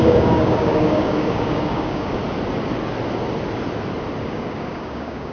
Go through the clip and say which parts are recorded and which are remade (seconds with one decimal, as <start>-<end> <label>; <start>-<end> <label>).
0.0-2.2 remade; 2.2-4.2 recorded; 4.2-5.3 remade